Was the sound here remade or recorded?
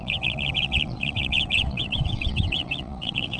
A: remade